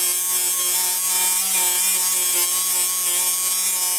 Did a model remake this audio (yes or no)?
no